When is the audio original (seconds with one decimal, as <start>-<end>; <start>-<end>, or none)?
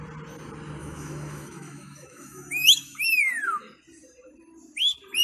0.0-0.8; 3.2-5.2